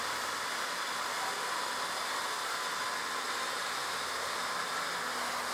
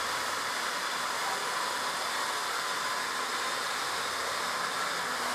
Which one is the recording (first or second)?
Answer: first